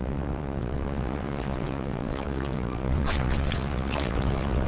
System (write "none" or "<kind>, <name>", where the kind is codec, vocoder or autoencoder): vocoder, WaveNeXt